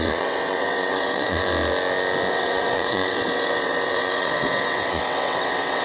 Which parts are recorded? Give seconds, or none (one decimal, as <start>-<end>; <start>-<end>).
1.5-2.3